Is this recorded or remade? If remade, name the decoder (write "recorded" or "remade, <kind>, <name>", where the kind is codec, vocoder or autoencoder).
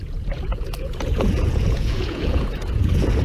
remade, vocoder, Vocos